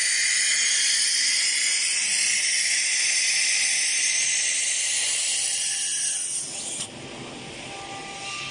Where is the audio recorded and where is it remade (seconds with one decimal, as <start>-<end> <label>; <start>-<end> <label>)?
0.0-8.5 recorded

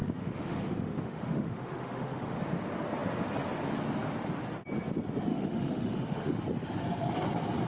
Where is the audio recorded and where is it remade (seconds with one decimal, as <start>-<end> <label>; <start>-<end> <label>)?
0.0-2.4 remade; 2.4-5.3 recorded; 5.3-6.4 remade; 6.4-7.7 recorded

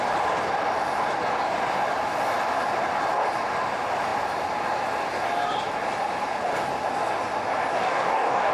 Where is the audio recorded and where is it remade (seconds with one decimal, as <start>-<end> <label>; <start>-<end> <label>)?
0.0-7.8 recorded; 7.8-8.5 remade

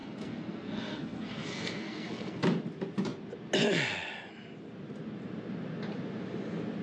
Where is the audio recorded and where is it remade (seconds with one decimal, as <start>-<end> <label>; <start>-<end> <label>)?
0.0-2.4 remade; 2.4-6.8 recorded

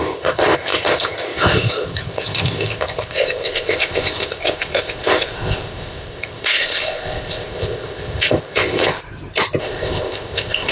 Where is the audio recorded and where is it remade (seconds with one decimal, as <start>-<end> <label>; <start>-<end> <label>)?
0.0-9.0 remade; 9.0-9.6 recorded; 9.6-10.7 remade

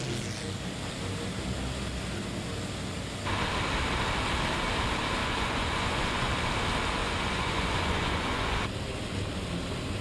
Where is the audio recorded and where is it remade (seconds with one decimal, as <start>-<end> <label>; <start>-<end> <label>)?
0.0-5.2 recorded; 5.2-6.3 remade; 6.3-7.0 recorded; 7.0-8.6 remade; 8.6-10.0 recorded

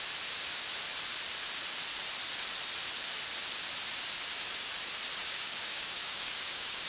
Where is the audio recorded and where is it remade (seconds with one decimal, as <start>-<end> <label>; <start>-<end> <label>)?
0.0-5.2 recorded; 5.2-6.9 remade